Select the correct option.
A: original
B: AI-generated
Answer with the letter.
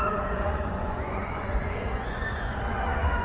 B